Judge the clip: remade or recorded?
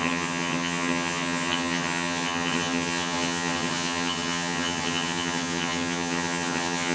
remade